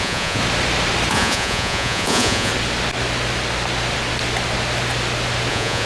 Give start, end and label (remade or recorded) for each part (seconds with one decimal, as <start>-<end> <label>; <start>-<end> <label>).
0.0-0.4 remade; 0.4-1.1 recorded; 1.1-2.5 remade; 2.5-5.5 recorded; 5.5-5.9 remade